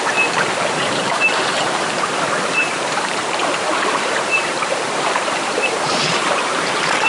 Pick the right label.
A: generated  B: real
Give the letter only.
A